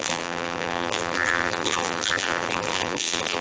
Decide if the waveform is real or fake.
fake